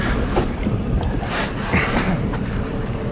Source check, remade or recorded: recorded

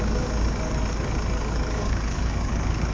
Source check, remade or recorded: remade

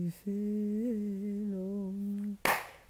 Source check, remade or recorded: recorded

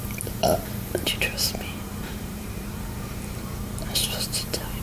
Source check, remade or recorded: remade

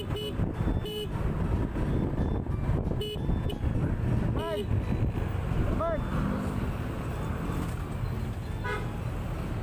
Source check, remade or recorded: recorded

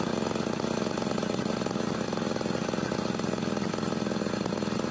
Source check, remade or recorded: recorded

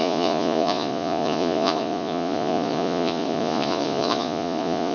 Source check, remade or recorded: remade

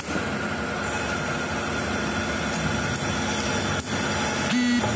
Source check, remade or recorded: recorded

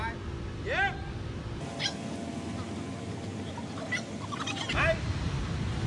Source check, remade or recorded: recorded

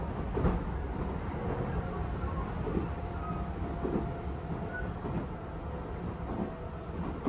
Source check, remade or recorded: recorded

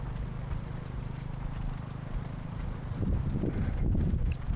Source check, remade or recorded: remade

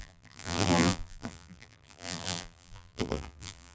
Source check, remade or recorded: remade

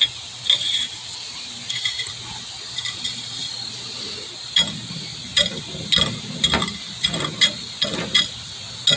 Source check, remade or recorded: recorded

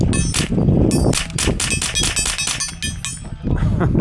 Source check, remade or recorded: recorded